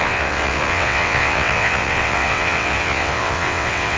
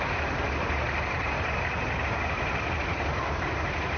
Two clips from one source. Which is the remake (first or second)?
first